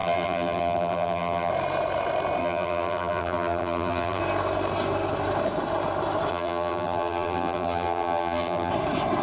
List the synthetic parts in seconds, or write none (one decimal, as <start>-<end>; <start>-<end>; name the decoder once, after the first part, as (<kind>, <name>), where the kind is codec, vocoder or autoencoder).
0.0-1.5 (vocoder, BigVGAN v2); 2.4-4.2; 6.3-8.7